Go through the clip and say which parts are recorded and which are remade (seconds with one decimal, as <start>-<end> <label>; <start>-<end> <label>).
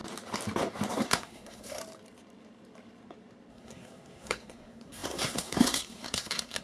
0.0-0.9 recorded; 0.9-1.8 remade; 1.8-3.5 recorded; 3.5-6.6 remade